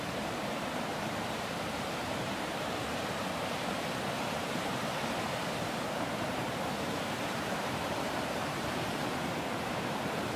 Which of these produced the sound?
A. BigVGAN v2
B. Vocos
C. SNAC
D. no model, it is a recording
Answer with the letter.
A